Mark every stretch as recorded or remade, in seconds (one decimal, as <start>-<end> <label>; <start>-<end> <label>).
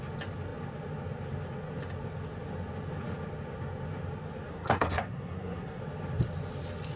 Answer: 0.0-4.5 recorded; 4.5-5.8 remade; 5.8-7.0 recorded